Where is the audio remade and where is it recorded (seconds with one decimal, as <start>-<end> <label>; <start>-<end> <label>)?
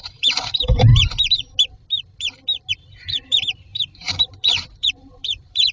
0.0-0.9 remade; 0.9-2.7 recorded; 2.7-5.7 remade